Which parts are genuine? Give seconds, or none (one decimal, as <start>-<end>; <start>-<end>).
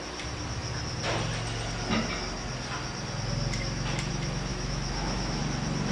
0.0-4.5; 5.4-5.9